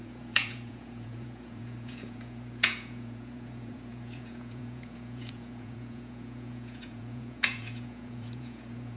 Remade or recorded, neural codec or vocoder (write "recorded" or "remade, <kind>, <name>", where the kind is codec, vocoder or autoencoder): remade, vocoder, Vocos